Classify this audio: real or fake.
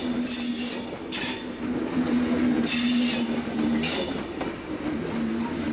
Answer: real